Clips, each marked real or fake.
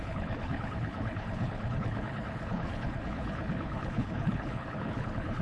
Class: fake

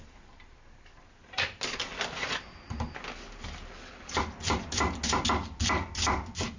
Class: real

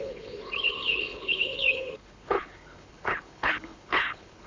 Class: fake